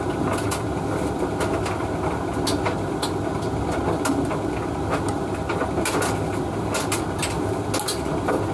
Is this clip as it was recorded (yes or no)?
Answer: yes